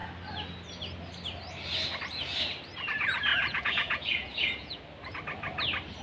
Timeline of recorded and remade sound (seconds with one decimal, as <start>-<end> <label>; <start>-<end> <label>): 0.0-3.3 recorded; 3.3-4.8 remade; 4.8-6.0 recorded